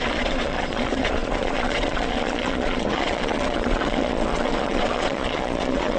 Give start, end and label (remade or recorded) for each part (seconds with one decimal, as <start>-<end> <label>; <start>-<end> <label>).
0.0-6.0 remade